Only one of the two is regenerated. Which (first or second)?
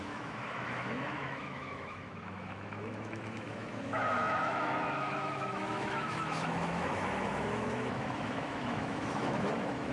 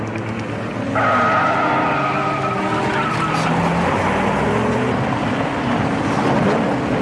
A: first